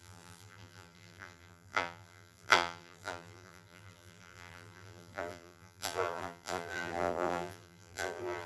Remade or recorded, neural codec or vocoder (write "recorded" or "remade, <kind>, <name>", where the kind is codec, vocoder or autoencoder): remade, vocoder, BigVGAN v2